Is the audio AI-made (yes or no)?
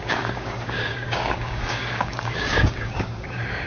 yes